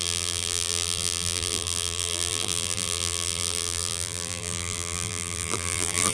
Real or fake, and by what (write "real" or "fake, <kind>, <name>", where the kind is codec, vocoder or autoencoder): fake, vocoder, BigVGAN v2